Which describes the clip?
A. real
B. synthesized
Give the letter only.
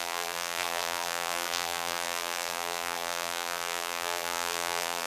B